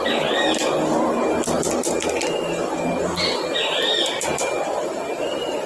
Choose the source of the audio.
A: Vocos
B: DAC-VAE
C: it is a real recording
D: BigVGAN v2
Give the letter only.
C